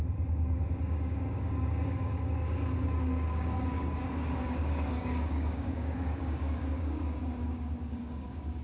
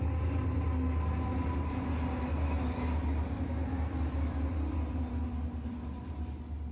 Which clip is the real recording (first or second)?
second